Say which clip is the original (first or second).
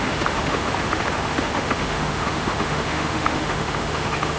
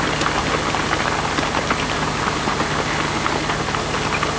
second